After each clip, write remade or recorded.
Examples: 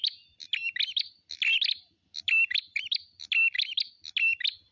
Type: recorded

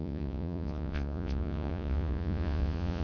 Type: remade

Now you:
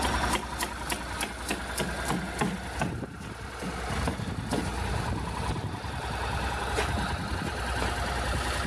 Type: recorded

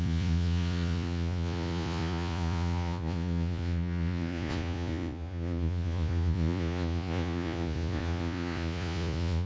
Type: remade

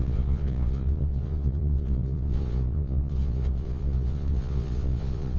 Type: remade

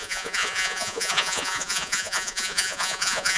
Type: remade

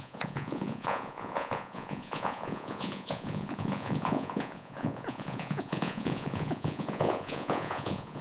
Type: remade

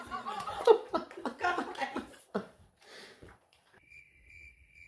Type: remade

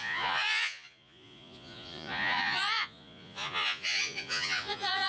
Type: remade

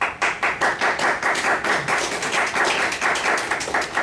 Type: recorded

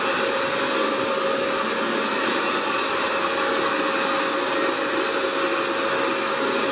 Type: recorded